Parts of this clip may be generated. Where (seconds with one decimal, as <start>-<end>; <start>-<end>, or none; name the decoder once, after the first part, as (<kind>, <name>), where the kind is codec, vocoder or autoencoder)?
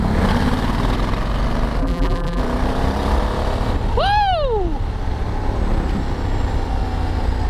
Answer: 1.8-2.4 (vocoder, BigVGAN v2)